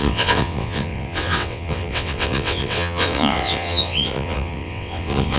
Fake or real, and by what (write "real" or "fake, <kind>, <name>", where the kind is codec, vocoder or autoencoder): fake, vocoder, WaveNeXt